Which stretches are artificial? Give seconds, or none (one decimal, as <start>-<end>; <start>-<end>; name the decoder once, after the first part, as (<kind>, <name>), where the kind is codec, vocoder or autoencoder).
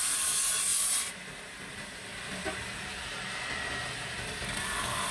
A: none